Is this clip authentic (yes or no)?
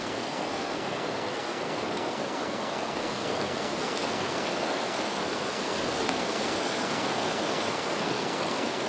no